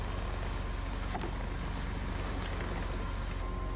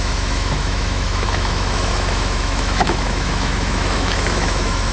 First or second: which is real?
first